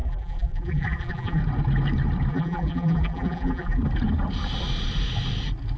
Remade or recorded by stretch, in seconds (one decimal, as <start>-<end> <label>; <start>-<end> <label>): 0.0-1.4 remade; 1.4-2.3 recorded; 2.3-3.8 remade; 3.8-5.8 recorded

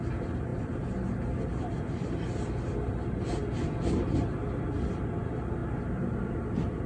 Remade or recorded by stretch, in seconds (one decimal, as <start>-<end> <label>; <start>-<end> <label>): 0.0-6.9 recorded

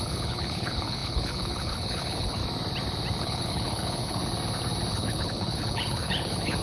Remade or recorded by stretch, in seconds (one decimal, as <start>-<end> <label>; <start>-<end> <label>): 0.0-2.4 remade; 2.4-3.2 recorded; 3.2-4.2 remade; 4.2-4.9 recorded; 4.9-6.6 remade